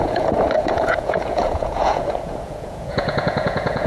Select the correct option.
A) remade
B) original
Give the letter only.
A